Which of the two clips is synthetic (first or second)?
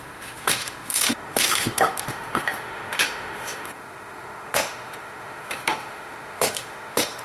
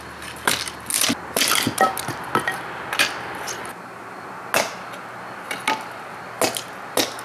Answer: first